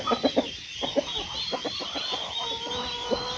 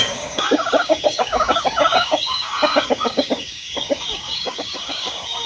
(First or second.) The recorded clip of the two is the first